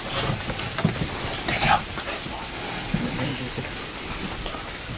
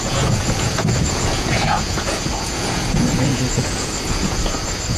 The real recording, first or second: first